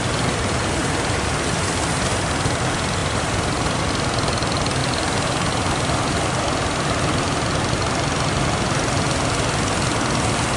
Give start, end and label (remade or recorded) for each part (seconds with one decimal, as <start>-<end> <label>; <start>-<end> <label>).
0.0-0.8 recorded; 0.8-1.7 remade; 1.7-3.0 recorded; 3.0-3.9 remade; 3.9-4.8 recorded; 4.8-5.5 remade; 5.5-10.6 recorded